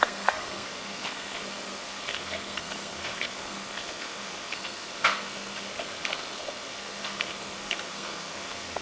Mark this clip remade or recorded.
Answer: remade